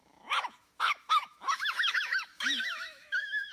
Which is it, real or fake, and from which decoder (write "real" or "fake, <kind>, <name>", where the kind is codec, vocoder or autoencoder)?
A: fake, autoencoder, DAC-VAE